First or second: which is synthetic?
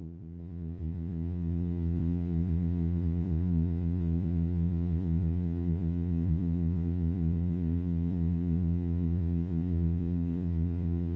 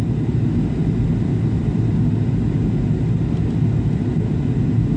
first